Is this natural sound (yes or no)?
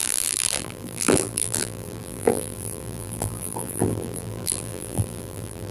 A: no